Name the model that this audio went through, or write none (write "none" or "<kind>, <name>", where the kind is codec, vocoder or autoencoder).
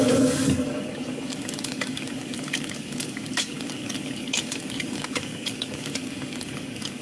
codec, DAC